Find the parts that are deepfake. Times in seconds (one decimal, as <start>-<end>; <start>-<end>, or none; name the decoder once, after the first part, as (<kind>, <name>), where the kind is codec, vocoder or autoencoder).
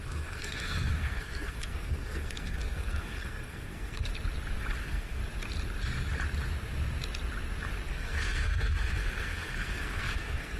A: 0.0-4.1 (codec, SNAC); 4.8-5.2; 7.9-10.6